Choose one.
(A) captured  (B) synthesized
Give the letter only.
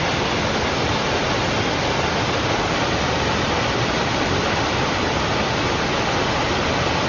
A